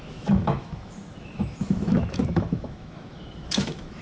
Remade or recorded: remade